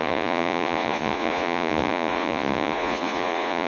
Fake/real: fake